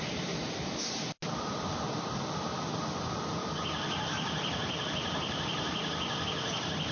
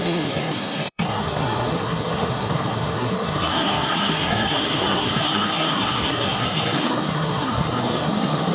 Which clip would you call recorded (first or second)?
first